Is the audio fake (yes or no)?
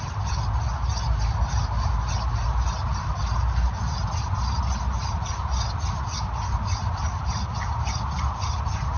no